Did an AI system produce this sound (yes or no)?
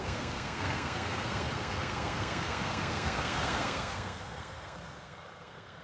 yes